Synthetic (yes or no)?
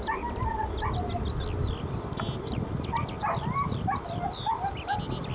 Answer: no